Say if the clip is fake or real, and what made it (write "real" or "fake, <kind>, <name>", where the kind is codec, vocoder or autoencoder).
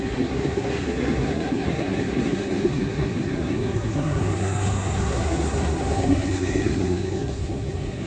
fake, codec, SNAC